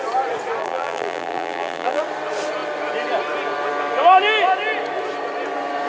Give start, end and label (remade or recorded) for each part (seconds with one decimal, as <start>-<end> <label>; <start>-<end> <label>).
0.0-0.6 recorded; 0.6-2.0 remade; 2.0-5.9 recorded